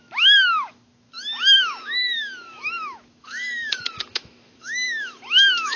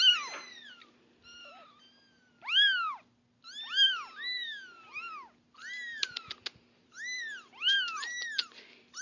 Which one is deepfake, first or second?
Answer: first